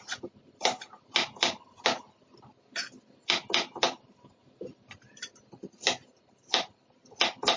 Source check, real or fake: real